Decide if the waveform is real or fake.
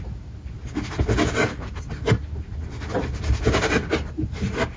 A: real